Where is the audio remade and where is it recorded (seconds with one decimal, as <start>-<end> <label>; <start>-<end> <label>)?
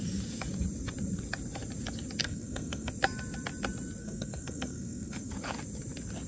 0.0-2.2 recorded; 2.2-2.9 remade; 2.9-4.0 recorded; 4.0-5.3 remade; 5.3-6.3 recorded